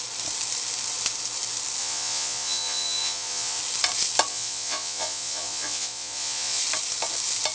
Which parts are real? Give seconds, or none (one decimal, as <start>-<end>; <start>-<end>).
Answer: 0.0-1.8; 3.6-4.3; 6.6-7.5